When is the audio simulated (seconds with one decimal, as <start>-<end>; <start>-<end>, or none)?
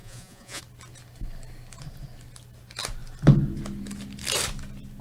0.0-0.6